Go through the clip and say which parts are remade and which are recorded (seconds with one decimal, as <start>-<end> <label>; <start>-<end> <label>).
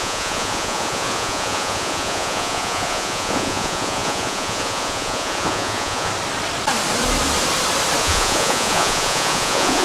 0.0-6.1 remade; 6.1-8.0 recorded; 8.0-9.8 remade